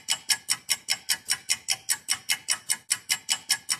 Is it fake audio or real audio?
real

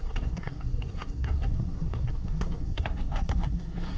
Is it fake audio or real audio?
fake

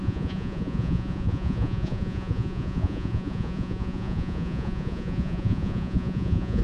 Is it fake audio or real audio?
fake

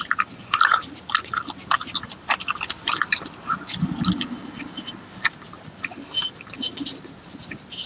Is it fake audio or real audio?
real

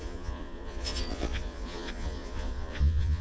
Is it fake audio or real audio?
fake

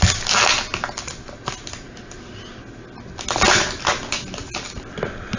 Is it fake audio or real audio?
real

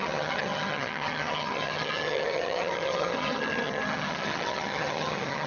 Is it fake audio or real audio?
fake